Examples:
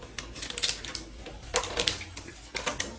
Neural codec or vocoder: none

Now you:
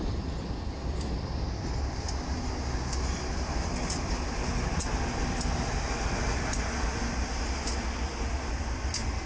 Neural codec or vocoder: none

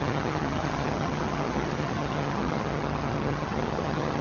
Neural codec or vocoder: vocoder, HiFi-GAN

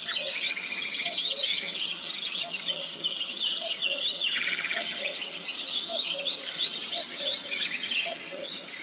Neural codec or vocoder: vocoder, HiFi-GAN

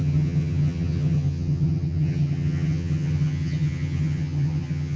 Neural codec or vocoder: vocoder, HiFi-GAN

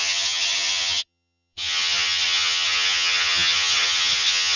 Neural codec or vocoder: vocoder, HiFi-GAN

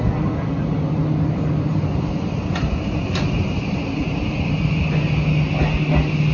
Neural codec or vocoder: none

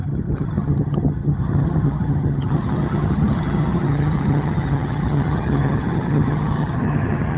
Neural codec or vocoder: vocoder, HiFi-GAN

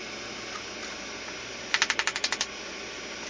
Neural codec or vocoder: none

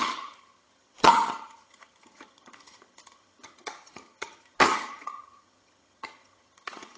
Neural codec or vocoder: vocoder, HiFi-GAN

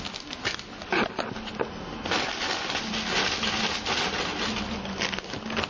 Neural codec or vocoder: none